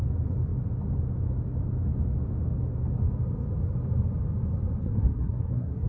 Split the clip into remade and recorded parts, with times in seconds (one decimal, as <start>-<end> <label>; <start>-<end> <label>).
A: 0.0-4.8 recorded; 4.8-5.9 remade